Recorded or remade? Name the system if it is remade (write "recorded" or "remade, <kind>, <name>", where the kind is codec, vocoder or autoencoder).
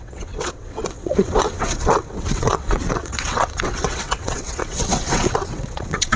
remade, vocoder, WaveNeXt